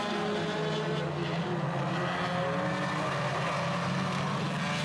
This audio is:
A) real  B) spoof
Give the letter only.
A